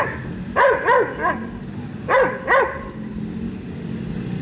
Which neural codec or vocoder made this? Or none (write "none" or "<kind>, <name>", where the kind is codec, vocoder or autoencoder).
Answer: none